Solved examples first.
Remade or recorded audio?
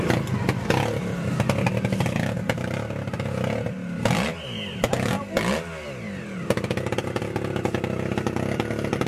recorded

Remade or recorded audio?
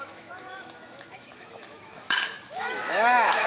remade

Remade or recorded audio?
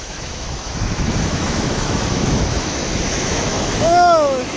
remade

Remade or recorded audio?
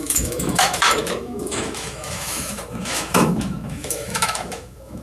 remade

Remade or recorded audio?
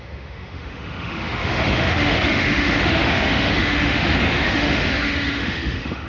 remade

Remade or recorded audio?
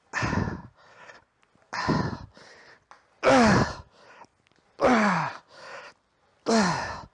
recorded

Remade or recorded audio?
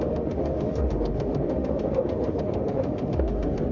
remade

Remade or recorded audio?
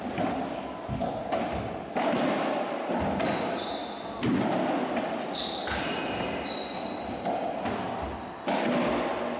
recorded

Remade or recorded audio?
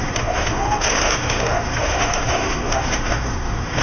remade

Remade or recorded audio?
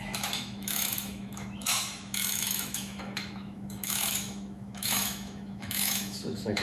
remade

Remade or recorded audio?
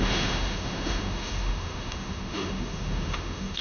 remade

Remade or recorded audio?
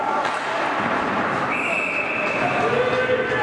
recorded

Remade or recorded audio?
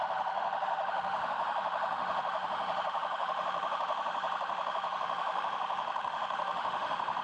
remade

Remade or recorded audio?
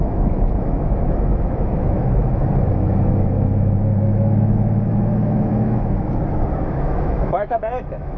remade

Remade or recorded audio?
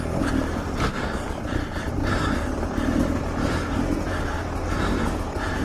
recorded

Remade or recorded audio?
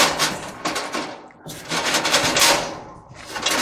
recorded